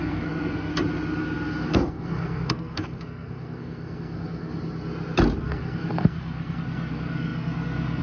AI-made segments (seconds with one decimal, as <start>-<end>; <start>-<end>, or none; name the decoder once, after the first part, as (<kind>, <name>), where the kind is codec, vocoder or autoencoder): 0.0-0.7 (codec, SNAC); 1.7-4.5; 5.4-8.0